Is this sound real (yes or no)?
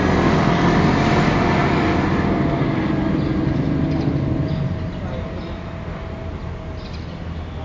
yes